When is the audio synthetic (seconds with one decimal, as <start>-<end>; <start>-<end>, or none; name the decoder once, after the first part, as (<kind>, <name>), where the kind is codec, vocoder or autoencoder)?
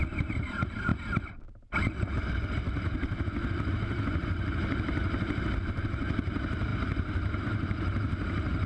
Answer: 0.0-0.9 (vocoder, BigVGAN v2); 3.7-8.7